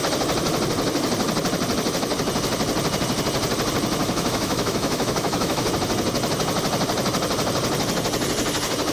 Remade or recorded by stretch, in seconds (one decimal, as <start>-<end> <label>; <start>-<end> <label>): 0.0-4.0 recorded; 4.0-5.7 remade; 5.7-8.9 recorded